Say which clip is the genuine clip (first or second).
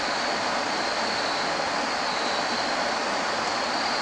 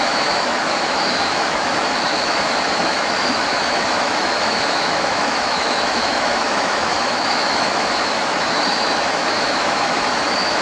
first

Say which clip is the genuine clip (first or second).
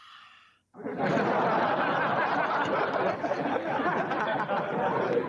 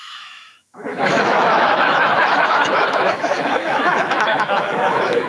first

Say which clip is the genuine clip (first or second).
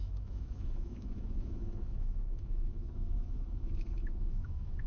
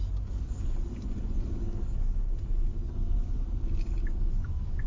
second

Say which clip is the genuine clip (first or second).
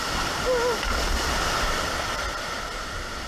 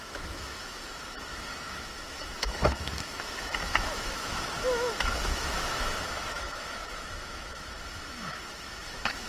first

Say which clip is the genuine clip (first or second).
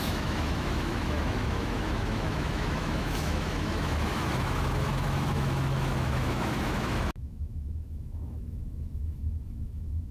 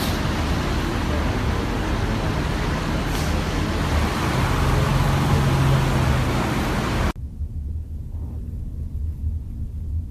second